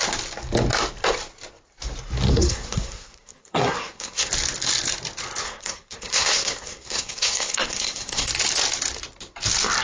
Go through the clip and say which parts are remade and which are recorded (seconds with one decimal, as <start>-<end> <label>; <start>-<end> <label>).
0.0-2.3 recorded; 2.3-4.3 remade; 4.3-5.4 recorded; 5.4-8.3 remade; 8.3-9.8 recorded